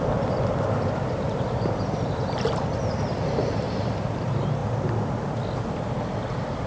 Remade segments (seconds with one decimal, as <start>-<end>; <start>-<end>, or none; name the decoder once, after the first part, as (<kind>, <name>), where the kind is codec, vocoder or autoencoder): 0.0-4.6 (vocoder, BigVGAN v2); 6.3-6.7